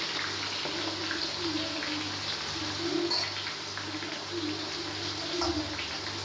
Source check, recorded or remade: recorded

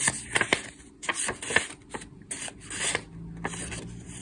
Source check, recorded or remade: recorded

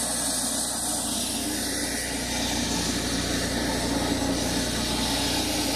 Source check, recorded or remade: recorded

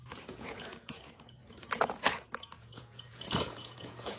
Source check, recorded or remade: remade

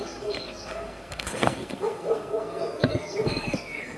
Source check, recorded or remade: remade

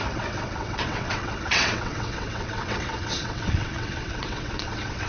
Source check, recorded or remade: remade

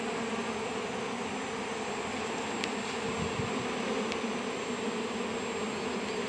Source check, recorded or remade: recorded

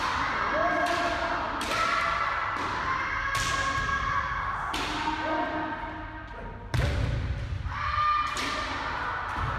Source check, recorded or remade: recorded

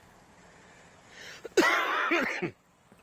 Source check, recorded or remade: recorded